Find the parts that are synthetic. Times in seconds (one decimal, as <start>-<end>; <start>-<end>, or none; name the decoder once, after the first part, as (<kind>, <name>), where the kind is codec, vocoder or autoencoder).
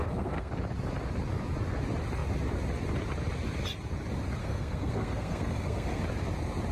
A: 0.0-0.5 (codec, SNAC); 4.4-6.0